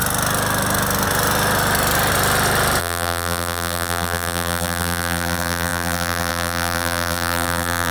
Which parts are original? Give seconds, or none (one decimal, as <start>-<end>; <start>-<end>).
0.0-2.8